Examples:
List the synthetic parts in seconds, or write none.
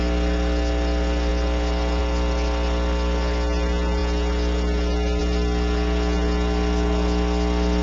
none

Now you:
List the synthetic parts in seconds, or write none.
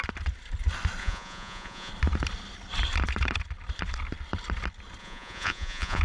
1.0-1.9 (vocoder, Vocos); 5.0-6.0